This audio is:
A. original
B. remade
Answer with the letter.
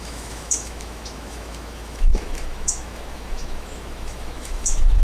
B